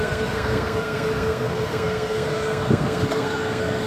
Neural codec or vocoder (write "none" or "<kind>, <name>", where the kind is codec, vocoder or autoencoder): codec, SNAC